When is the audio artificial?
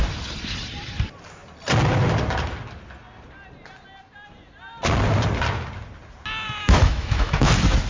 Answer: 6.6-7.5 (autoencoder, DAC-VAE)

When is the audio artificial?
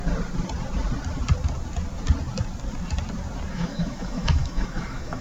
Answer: 3.5-5.2 (autoencoder, DAC-VAE)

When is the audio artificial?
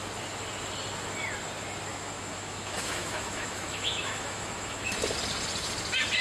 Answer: 1.9-4.9 (autoencoder, DAC-VAE)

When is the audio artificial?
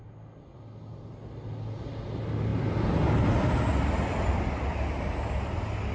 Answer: none